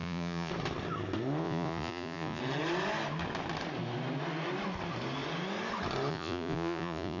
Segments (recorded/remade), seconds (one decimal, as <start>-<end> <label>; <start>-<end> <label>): 0.0-0.5 remade; 0.5-1.4 recorded; 1.4-2.4 remade; 2.4-6.1 recorded; 6.1-7.2 remade